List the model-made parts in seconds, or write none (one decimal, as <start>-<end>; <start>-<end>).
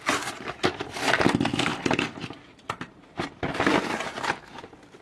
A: 1.7-5.0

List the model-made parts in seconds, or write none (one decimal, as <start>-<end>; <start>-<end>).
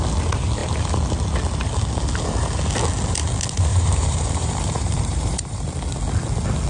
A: 3.7-5.7